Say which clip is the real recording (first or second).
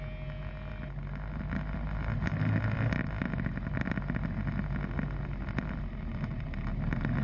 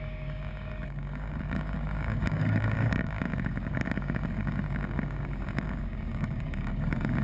first